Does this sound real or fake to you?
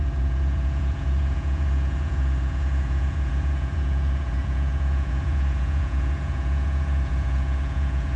fake